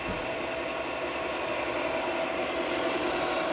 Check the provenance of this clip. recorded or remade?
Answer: recorded